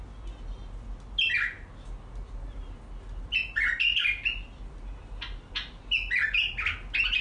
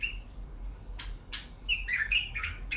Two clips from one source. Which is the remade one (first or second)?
second